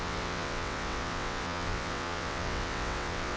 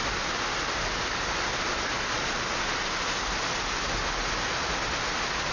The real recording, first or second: second